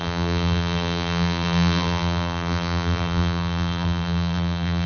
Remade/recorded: remade